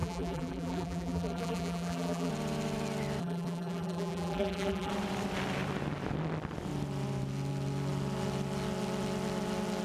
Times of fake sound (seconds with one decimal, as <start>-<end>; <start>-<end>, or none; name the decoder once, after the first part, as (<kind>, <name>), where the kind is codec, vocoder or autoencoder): 0.0-2.3 (vocoder, BigVGAN v2); 3.2-4.9